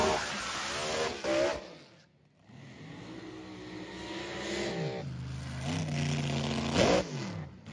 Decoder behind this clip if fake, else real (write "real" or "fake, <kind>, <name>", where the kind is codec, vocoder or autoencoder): real